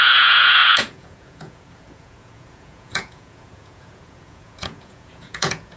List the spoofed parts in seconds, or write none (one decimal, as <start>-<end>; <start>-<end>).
0.0-5.8